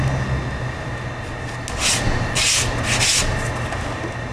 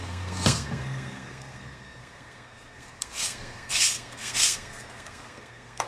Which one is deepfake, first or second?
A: second